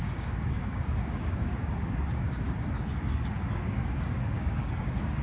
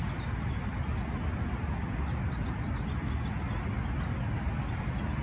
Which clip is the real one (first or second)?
second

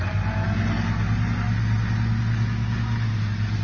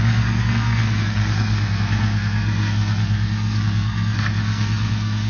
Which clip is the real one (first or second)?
first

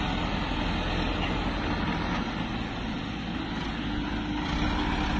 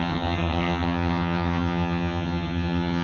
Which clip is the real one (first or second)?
first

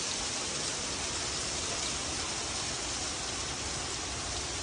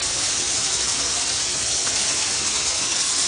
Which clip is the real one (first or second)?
first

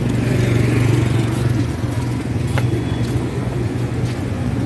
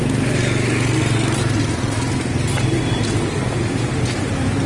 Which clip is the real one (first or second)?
second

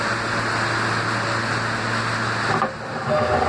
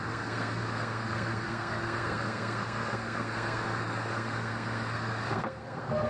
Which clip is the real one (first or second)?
first